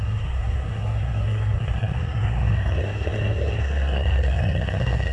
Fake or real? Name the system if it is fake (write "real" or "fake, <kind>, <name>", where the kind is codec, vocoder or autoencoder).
fake, codec, SNAC